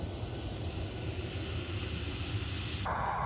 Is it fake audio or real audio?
real